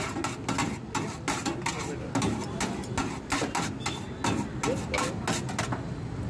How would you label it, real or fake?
real